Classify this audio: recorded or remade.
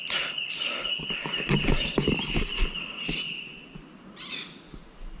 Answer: recorded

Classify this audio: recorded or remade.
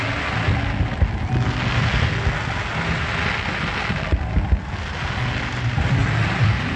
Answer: recorded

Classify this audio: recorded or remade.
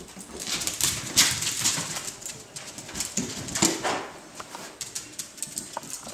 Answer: remade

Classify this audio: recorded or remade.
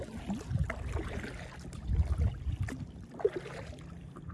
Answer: recorded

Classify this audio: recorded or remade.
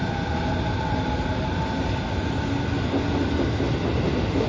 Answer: recorded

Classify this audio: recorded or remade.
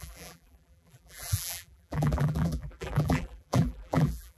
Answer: remade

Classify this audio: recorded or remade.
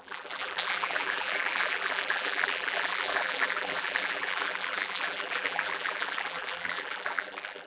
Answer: remade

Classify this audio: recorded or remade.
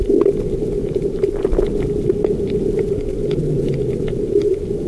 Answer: recorded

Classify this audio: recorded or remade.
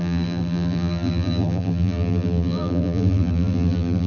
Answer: remade